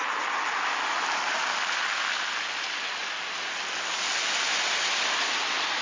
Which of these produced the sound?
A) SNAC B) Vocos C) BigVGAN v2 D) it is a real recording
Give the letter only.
D